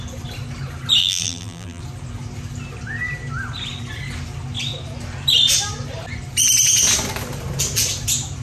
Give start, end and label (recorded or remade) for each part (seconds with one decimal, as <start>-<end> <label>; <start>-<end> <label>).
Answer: 0.0-1.0 recorded; 1.0-1.8 remade; 1.8-8.4 recorded